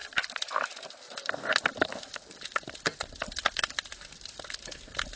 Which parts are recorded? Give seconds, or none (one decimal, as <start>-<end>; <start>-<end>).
0.0-5.2